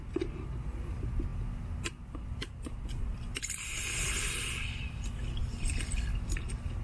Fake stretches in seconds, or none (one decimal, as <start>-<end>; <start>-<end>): none